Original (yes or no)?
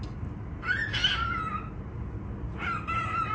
yes